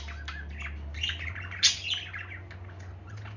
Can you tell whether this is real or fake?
real